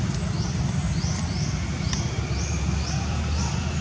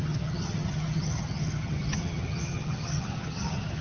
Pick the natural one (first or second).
first